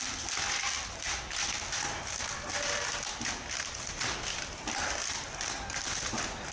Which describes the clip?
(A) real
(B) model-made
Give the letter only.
A